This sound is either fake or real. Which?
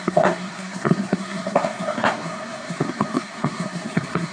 fake